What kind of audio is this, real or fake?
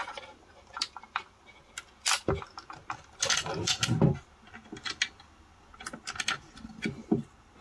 real